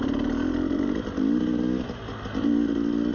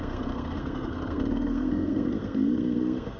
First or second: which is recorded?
first